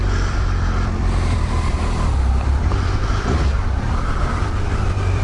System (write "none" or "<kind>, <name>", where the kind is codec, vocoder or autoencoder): vocoder, BigVGAN v2